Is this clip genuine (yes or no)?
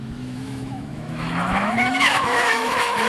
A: no